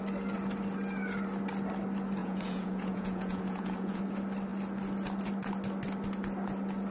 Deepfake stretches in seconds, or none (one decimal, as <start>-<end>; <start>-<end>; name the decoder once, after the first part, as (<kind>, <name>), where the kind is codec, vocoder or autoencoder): 2.2-4.0 (vocoder, Vocos)